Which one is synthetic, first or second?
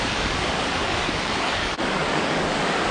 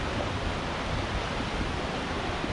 first